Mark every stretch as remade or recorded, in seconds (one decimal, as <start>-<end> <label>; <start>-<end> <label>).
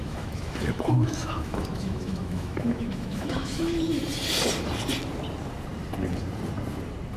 0.0-4.0 remade; 4.0-7.2 recorded